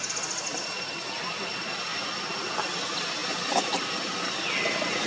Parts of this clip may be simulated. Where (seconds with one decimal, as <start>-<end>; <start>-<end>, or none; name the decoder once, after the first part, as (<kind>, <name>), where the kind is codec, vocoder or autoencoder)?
none